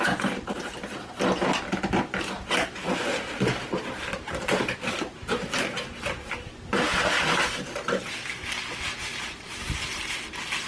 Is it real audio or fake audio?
real